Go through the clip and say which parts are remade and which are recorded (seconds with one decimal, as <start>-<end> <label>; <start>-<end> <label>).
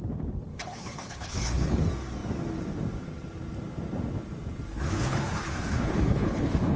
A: 0.0-0.5 recorded; 0.5-1.8 remade; 1.8-4.7 recorded; 4.7-6.8 remade